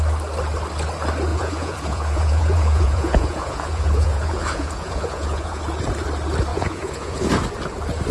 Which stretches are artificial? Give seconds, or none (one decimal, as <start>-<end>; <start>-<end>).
1.3-5.6; 6.5-7.3